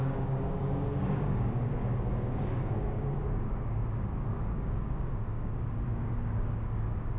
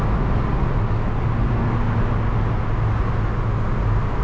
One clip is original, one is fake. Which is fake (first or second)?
first